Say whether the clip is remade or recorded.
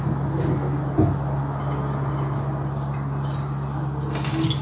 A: recorded